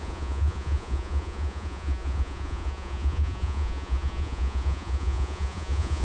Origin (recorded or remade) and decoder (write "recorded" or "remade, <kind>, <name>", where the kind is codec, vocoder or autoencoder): remade, vocoder, Vocos